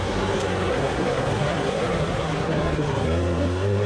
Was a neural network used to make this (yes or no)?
yes